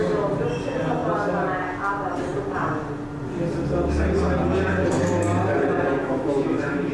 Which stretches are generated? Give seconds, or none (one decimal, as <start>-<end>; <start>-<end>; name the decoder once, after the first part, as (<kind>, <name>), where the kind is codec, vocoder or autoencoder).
6.0-6.9 (autoencoder, DAC-VAE)